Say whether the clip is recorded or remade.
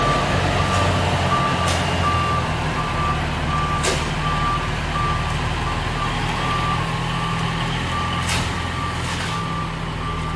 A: recorded